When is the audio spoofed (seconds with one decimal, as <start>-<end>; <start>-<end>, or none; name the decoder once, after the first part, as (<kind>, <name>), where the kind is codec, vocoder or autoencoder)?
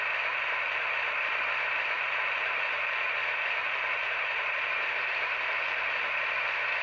2.0-5.5 (vocoder, BigVGAN v2)